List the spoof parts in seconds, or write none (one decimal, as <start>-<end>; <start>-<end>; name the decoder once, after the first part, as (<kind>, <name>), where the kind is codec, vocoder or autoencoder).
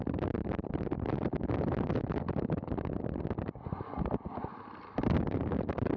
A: none